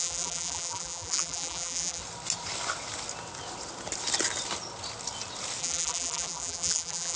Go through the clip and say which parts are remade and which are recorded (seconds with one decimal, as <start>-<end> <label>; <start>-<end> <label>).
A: 0.0-2.0 remade; 2.0-5.6 recorded; 5.6-7.2 remade